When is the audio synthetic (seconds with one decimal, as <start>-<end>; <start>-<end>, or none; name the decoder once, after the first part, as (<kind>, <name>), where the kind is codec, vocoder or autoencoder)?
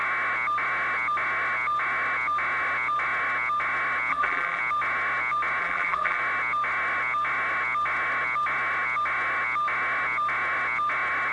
4.1-4.6 (vocoder, BigVGAN v2); 5.6-6.2